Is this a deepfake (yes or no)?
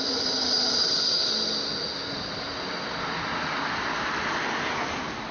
no